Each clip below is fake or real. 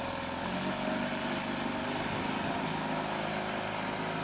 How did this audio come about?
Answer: real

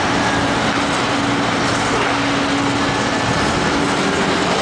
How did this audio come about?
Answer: real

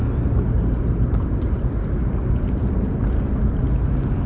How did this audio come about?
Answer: real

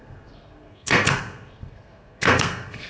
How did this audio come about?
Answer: fake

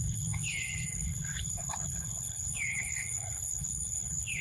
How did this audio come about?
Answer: fake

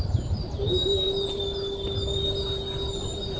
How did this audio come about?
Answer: real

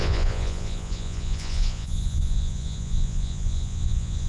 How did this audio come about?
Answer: fake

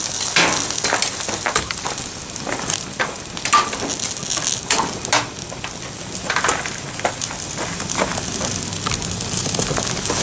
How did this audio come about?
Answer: real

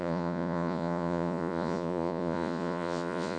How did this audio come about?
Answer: fake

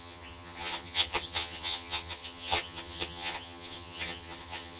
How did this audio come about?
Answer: fake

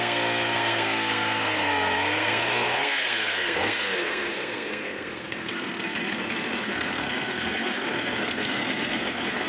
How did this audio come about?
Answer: fake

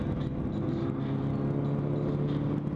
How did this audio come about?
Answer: real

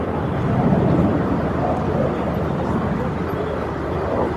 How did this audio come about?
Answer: real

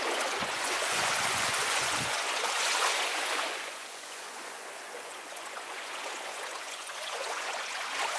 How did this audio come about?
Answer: fake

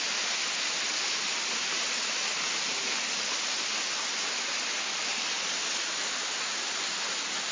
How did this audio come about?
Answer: real